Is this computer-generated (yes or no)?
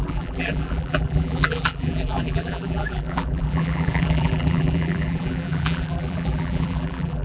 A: yes